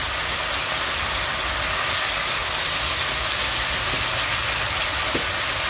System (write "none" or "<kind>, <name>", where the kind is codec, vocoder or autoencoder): none